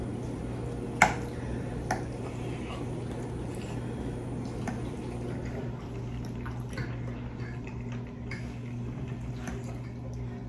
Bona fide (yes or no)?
yes